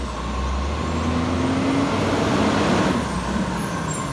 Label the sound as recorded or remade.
recorded